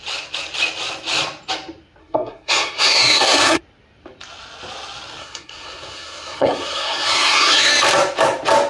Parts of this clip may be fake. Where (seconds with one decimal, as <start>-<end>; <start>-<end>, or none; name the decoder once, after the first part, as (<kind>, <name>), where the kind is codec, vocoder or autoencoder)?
2.0-3.6 (codec, SNAC); 5.2-7.7